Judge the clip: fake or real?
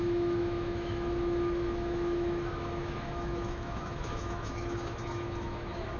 fake